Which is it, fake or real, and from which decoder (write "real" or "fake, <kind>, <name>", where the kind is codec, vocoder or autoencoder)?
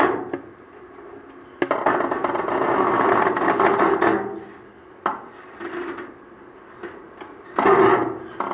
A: real